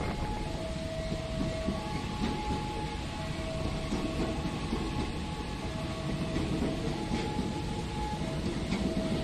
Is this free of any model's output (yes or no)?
yes